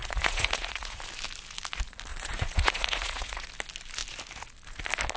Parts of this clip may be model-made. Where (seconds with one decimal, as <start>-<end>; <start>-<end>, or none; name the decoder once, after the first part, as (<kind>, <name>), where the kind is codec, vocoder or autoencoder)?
0.0-1.0 (vocoder, Vocos); 2.1-3.5